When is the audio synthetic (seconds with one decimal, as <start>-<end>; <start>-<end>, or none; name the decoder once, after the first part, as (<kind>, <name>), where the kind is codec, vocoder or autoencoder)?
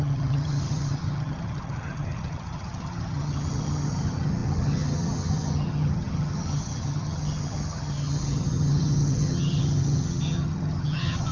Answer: 0.0-11.3 (vocoder, HiFi-GAN)